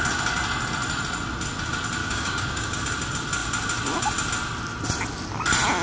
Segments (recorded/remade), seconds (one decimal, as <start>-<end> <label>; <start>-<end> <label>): 0.0-2.0 recorded; 2.0-2.8 remade; 2.8-5.8 recorded